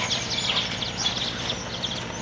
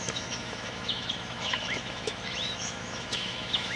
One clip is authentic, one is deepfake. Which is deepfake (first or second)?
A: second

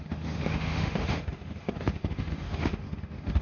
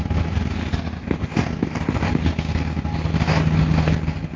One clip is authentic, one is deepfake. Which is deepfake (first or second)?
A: first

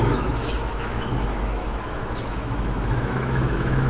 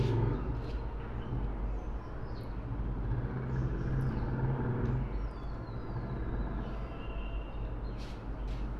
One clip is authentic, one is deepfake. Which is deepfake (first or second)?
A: first